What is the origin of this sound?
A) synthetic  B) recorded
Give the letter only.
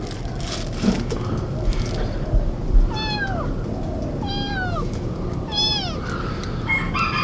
B